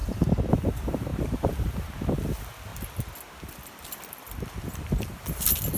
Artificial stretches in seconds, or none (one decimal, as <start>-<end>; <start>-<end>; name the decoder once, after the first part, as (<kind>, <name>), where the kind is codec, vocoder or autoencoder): 1.1-2.2 (vocoder, BigVGAN v2)